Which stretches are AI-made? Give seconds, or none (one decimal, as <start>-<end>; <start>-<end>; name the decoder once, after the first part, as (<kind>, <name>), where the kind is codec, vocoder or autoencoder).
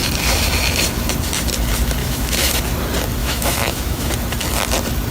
2.0-2.6 (autoencoder, DAC-VAE); 3.2-4.1